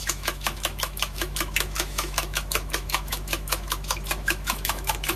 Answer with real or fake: fake